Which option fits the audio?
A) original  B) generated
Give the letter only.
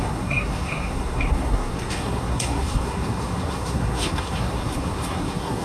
B